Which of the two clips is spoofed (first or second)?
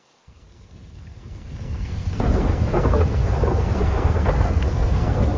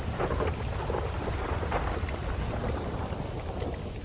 first